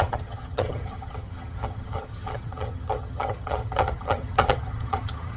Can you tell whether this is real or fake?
fake